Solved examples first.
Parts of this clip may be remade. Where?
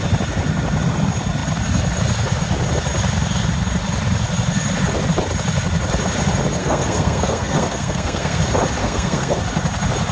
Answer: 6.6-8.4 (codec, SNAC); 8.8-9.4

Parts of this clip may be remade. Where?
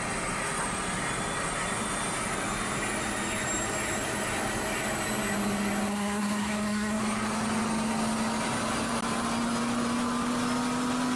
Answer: 5.9-7.0 (codec, SNAC)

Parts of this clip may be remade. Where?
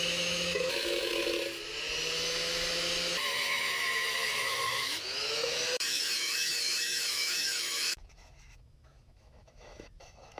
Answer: 0.0-1.2 (autoencoder, DAC-VAE); 3.2-10.4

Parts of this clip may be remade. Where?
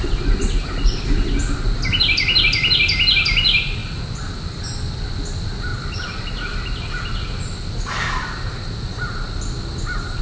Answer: none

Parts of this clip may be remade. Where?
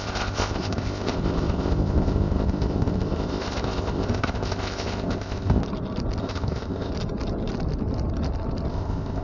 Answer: 0.0-5.6 (codec, ZipCodec); 6.2-6.9; 8.7-9.2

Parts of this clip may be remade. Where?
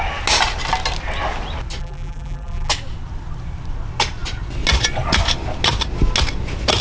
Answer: 1.8-2.7 (vocoder, BigVGAN v2)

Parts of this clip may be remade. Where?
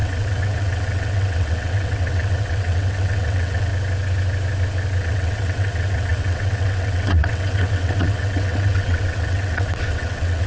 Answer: 0.0-3.7 (vocoder, WaveNeXt); 5.0-10.5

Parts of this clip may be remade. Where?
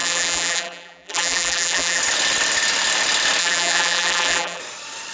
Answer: 0.0-2.0 (vocoder, BigVGAN v2); 3.4-4.6